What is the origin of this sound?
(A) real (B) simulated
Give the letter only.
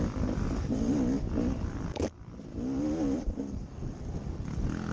A